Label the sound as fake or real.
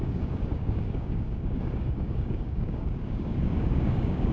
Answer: fake